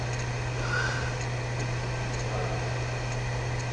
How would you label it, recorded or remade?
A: recorded